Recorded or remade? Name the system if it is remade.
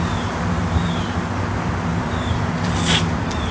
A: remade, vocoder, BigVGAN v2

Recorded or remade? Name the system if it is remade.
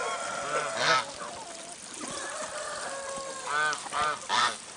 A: recorded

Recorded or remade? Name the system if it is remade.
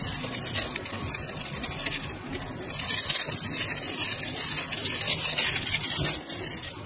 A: recorded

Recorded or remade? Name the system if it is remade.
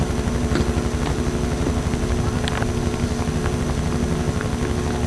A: recorded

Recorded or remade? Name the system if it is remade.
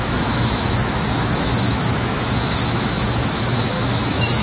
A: remade, autoencoder, DAC-VAE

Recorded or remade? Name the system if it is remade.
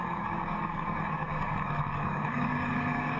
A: remade, codec, DAC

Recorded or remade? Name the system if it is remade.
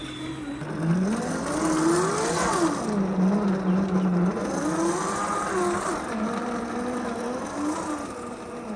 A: recorded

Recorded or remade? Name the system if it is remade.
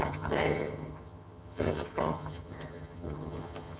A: remade, vocoder, HiFi-GAN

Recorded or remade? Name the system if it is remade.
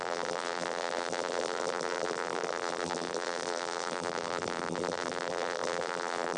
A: remade, vocoder, BigVGAN v2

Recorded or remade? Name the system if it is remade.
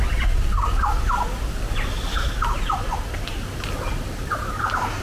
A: recorded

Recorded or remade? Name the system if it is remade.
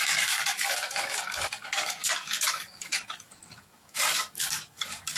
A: remade, codec, DAC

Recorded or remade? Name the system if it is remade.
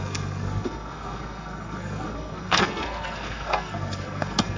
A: remade, codec, SNAC